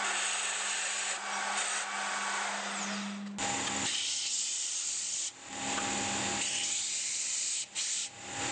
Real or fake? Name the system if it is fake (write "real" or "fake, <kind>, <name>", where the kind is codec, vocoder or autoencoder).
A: real